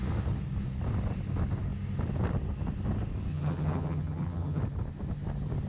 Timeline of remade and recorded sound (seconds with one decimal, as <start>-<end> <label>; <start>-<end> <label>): 0.0-3.3 recorded; 3.3-4.6 remade; 4.6-5.7 recorded